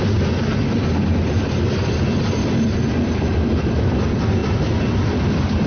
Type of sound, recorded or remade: recorded